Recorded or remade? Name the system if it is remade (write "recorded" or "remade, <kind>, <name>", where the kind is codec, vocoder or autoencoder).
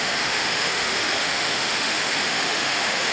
remade, autoencoder, DAC-VAE